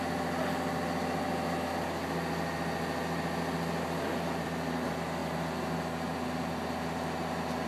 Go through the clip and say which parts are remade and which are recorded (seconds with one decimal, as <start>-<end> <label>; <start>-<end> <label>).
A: 0.0-7.7 recorded